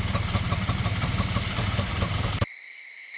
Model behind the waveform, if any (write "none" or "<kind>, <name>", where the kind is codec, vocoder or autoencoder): vocoder, BigVGAN v2